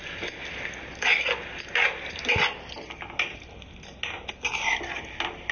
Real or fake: real